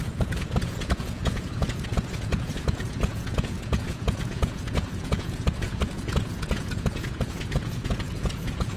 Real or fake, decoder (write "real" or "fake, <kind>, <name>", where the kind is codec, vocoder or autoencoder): fake, vocoder, Vocos